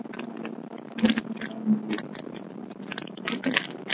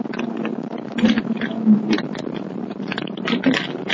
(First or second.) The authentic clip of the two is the first